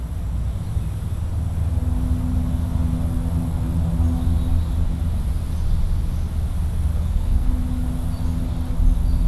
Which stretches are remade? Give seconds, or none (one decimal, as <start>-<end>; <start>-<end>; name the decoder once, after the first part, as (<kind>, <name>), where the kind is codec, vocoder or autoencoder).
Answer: 6.9-7.5 (codec, SNAC)